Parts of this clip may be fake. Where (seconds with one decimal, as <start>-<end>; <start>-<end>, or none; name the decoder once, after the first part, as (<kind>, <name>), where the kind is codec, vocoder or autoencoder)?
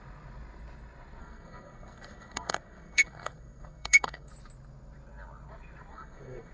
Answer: 1.2-4.3 (codec, SNAC); 5.9-6.5